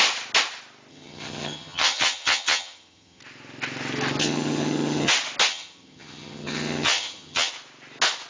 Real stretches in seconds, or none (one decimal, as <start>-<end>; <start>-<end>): 0.0-0.9; 3.2-4.2; 5.1-5.5; 7.5-8.3